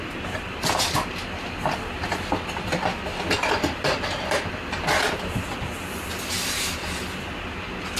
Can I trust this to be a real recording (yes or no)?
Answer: yes